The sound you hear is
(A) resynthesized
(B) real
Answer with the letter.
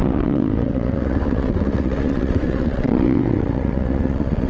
A